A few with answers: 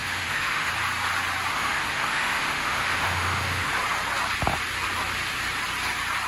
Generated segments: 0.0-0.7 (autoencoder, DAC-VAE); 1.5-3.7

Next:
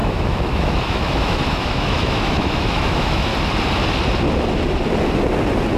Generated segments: 0.0-3.3 (autoencoder, DAC-VAE)

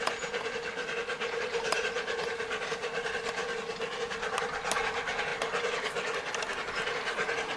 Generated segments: none

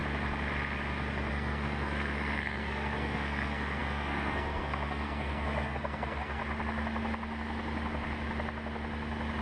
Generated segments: 1.3-6.4 (codec, SNAC)

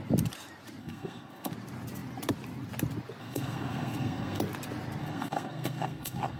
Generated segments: 0.8-1.5 (codec, SNAC); 3.2-4.4; 5.0-6.4

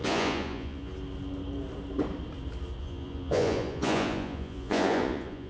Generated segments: 0.0-0.9 (vocoder, Vocos); 2.8-5.5